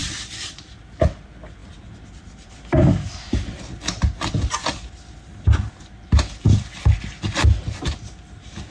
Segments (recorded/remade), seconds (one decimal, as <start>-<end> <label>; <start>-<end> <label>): 0.0-0.7 remade; 0.7-8.7 recorded